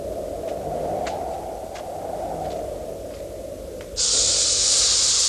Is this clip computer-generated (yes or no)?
yes